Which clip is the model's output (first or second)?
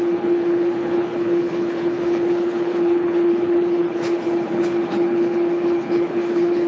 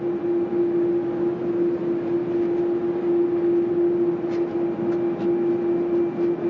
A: first